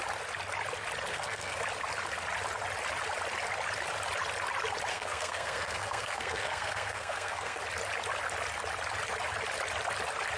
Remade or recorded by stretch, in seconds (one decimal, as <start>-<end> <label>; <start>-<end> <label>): 0.0-1.1 recorded; 1.1-1.6 remade; 1.6-4.9 recorded; 4.9-7.6 remade; 7.6-10.4 recorded

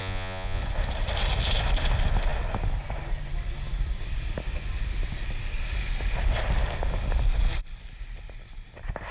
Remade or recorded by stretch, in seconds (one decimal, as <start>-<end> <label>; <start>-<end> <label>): 0.0-0.6 remade; 0.6-9.1 recorded

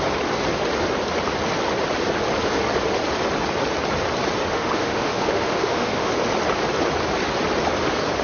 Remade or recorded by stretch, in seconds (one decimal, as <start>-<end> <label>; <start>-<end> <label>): 0.0-4.5 recorded; 4.5-6.1 remade; 6.1-8.2 recorded

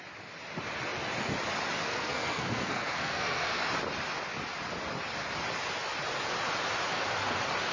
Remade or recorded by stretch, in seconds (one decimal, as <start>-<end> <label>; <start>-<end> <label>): 0.0-1.9 recorded; 1.9-3.6 remade; 3.6-7.7 recorded

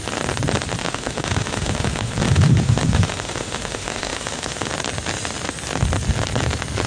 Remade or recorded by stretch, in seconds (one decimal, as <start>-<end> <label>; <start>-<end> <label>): 0.0-0.8 recorded; 0.8-4.7 remade; 4.7-6.9 recorded

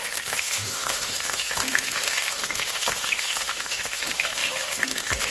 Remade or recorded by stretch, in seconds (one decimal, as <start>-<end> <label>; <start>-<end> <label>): 0.0-5.3 remade

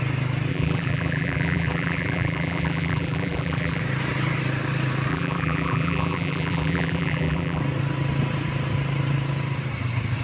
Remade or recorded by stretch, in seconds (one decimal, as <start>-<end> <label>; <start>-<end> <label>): 0.0-0.5 recorded; 0.5-3.8 remade; 3.8-5.1 recorded; 5.1-7.6 remade; 7.6-10.2 recorded

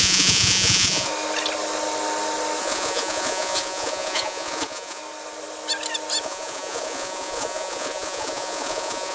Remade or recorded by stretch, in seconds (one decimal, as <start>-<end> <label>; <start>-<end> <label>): 0.0-1.1 remade; 1.1-2.6 recorded; 2.6-5.0 remade; 5.0-6.2 recorded; 6.2-9.1 remade